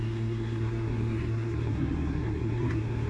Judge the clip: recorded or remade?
remade